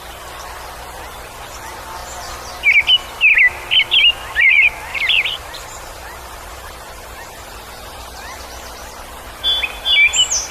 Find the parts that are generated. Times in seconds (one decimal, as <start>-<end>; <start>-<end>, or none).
4.9-8.4